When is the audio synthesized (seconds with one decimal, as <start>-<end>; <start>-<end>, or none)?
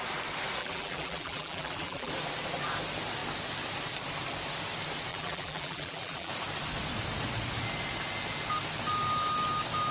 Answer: 0.6-2.1; 5.1-6.3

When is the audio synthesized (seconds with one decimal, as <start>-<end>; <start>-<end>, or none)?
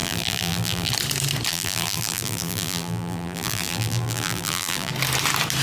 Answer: 0.0-0.9; 1.5-4.9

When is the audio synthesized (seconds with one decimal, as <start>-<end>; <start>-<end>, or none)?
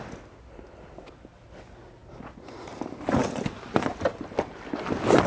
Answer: none